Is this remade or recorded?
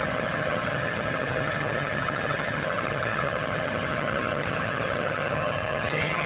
remade